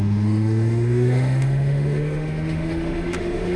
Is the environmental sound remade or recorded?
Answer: remade